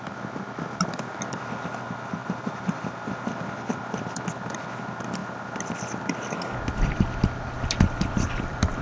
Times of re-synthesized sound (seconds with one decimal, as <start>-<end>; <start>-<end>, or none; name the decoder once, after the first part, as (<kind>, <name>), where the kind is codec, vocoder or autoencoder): 2.2-3.3 (vocoder, BigVGAN v2)